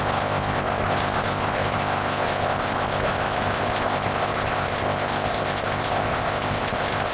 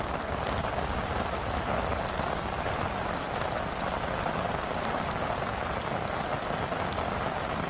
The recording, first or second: second